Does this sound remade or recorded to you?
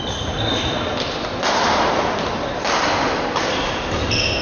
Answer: recorded